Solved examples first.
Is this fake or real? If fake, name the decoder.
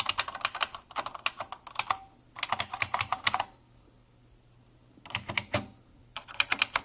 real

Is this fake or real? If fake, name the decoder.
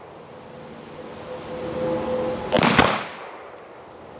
real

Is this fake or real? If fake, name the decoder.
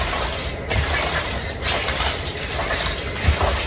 fake, vocoder, BigVGAN v2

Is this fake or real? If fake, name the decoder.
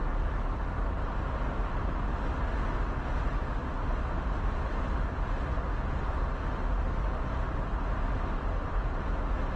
real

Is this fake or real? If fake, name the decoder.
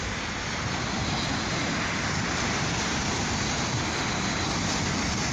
real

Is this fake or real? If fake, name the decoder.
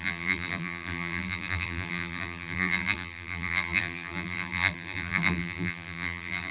fake, vocoder, BigVGAN v2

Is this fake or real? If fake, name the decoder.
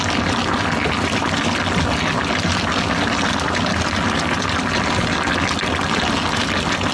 real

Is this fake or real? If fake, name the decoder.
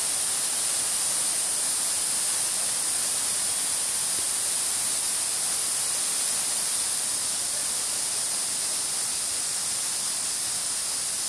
real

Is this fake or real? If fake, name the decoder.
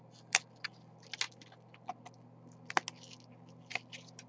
real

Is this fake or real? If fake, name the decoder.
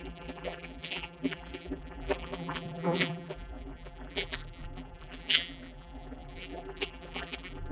fake, vocoder, BigVGAN v2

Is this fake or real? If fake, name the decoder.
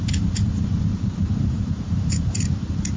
fake, vocoder, BigVGAN v2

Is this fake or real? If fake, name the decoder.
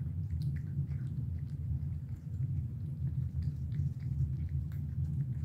fake, vocoder, BigVGAN v2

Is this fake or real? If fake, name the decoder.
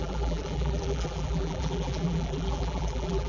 fake, vocoder, BigVGAN v2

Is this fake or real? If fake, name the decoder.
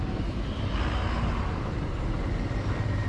real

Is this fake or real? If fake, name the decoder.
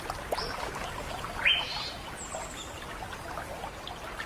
real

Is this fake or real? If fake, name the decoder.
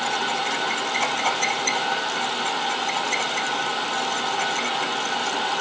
real